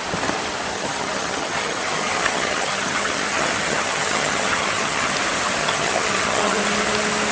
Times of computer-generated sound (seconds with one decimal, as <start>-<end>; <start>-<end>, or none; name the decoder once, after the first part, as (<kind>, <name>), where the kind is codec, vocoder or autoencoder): 0.7-5.1 (vocoder, HiFi-GAN); 5.6-6.6